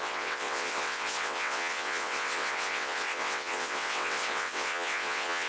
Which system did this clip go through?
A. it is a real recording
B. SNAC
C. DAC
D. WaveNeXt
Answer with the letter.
D